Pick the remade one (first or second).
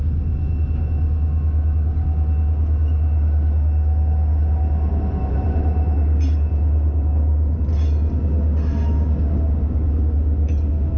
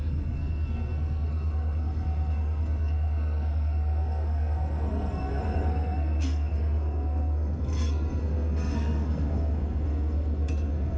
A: second